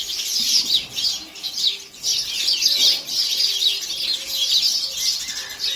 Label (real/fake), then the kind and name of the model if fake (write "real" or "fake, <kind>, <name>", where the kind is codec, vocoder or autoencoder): real